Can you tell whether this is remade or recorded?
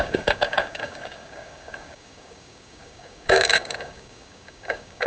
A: remade